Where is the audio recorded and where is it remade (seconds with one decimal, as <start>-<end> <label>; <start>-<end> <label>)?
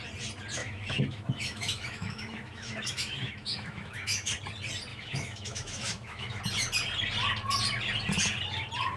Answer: 0.0-0.6 recorded; 0.6-4.3 remade; 4.3-4.9 recorded; 4.9-6.4 remade; 6.4-9.0 recorded